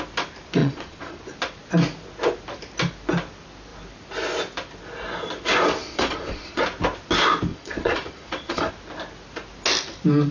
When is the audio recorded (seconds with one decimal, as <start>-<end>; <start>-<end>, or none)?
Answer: 0.0-0.6; 1.2-5.8; 6.6-7.5; 8.7-10.3